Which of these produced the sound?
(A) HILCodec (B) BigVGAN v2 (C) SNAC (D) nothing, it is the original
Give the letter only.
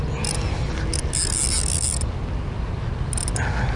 D